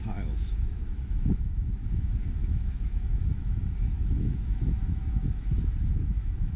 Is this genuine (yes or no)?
no